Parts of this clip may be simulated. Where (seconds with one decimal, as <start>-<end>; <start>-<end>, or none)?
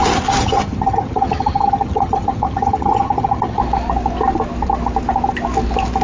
0.0-3.6